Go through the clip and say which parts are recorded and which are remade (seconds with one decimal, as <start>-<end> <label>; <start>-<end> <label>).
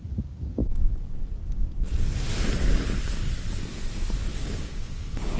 0.0-4.3 recorded; 4.3-5.4 remade